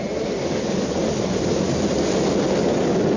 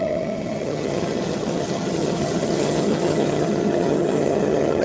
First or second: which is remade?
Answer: second